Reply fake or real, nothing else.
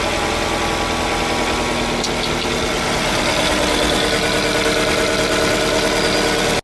real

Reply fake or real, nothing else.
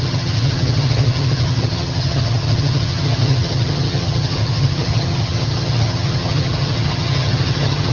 fake